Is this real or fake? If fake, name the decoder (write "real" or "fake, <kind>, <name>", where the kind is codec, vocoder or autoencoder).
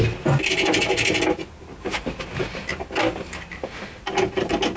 real